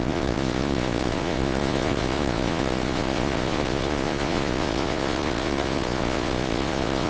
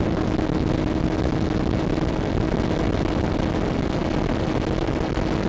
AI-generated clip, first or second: first